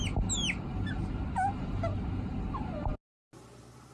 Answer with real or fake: real